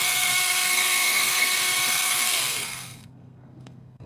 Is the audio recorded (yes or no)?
no